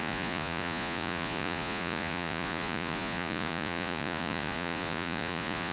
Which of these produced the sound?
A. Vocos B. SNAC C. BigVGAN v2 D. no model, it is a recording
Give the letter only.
A